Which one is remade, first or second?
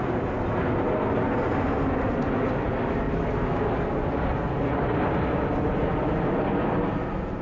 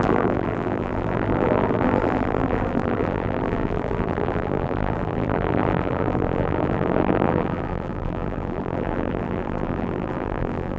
second